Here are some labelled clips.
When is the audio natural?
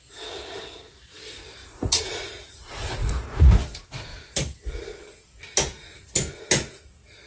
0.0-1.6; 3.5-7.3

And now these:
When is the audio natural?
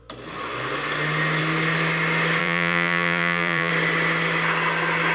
0.0-2.4; 3.7-5.1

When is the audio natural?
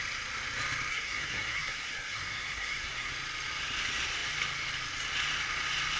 0.0-0.9; 3.1-6.0